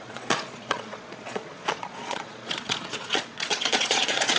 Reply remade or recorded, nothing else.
remade